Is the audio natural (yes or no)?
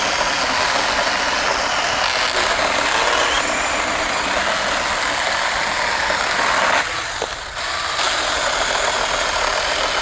yes